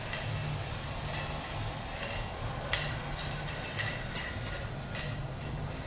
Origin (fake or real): real